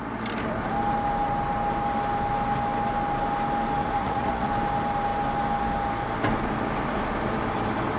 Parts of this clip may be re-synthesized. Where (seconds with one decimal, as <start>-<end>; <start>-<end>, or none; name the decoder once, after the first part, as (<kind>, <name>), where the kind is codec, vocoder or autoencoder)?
3.8-4.5 (vocoder, Vocos)